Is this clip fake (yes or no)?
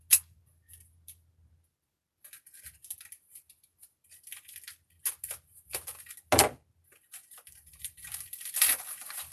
no